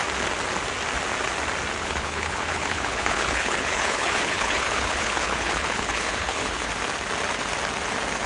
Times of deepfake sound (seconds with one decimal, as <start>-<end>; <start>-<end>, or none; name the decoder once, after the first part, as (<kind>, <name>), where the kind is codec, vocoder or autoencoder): 1.8-6.7 (codec, HILCodec)